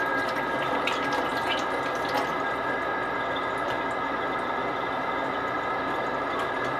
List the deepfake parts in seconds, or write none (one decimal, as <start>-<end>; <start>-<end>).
none